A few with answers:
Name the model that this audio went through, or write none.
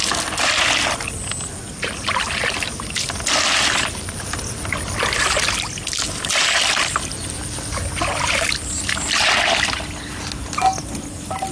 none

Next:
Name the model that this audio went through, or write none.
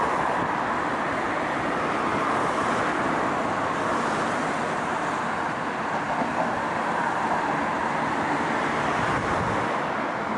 none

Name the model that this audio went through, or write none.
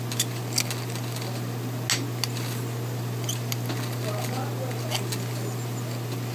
none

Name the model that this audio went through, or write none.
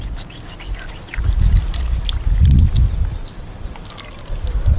none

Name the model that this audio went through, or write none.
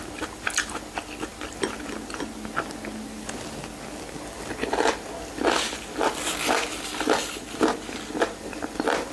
none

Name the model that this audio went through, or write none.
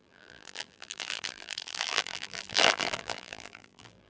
vocoder, BigVGAN v2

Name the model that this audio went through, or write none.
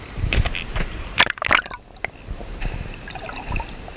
none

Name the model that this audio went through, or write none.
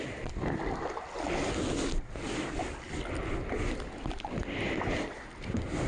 none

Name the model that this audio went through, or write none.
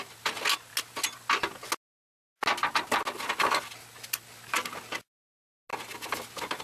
none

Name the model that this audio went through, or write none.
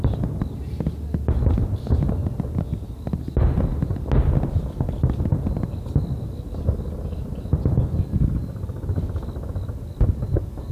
none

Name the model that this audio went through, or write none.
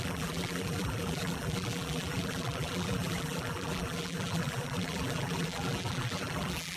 vocoder, BigVGAN v2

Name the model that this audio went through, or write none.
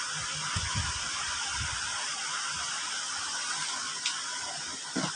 none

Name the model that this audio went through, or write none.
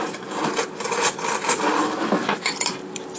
vocoder, BigVGAN v2